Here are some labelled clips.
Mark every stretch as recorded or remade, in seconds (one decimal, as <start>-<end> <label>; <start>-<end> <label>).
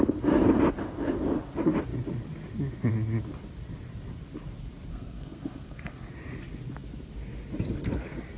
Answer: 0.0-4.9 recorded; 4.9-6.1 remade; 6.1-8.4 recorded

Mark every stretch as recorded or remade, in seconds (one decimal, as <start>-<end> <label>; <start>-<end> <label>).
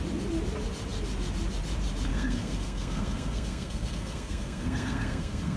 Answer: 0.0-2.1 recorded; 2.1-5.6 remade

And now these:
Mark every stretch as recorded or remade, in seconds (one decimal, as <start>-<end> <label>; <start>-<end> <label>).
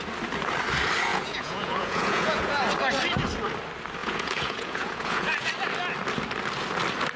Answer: 0.0-1.1 recorded; 1.1-2.6 remade; 2.6-4.0 recorded; 4.0-5.5 remade; 5.5-7.2 recorded